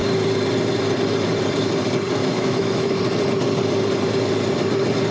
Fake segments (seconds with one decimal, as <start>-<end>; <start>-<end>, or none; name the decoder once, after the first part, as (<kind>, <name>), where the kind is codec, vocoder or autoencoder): 2.2-3.0 (autoencoder, DAC-VAE)